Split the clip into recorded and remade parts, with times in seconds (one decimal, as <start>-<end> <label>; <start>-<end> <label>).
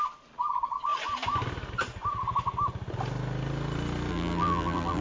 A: 0.0-4.1 recorded; 4.1-5.0 remade